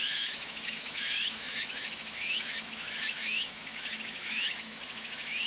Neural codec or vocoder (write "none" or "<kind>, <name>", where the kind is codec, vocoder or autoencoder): autoencoder, DAC-VAE